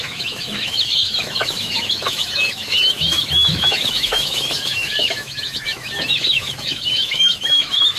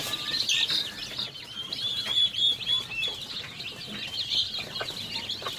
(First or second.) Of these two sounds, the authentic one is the second